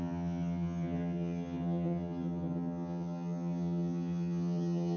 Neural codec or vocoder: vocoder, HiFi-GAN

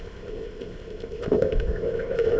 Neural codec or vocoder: codec, ZipCodec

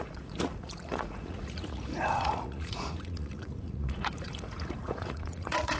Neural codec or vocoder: vocoder, Vocos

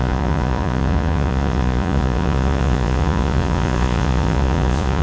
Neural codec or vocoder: vocoder, Vocos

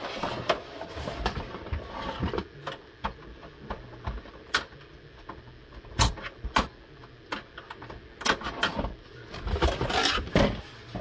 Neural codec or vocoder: none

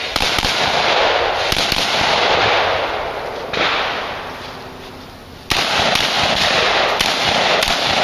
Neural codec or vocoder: none